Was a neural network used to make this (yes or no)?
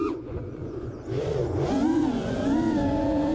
yes